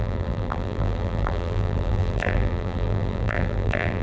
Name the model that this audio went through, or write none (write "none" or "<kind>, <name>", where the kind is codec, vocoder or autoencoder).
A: vocoder, BigVGAN v2